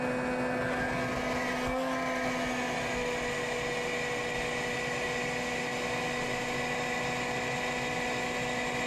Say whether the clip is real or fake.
real